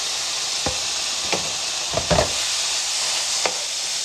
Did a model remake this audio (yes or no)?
no